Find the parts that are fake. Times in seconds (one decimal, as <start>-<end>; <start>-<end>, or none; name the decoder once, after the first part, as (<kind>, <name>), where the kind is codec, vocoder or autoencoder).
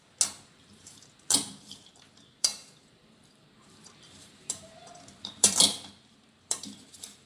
0.6-7.3 (vocoder, BigVGAN v2)